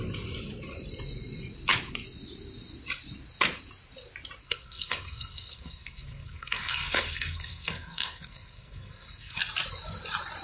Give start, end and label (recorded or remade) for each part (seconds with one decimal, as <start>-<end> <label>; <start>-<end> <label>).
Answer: 0.0-4.4 recorded; 4.4-9.4 remade; 9.4-10.4 recorded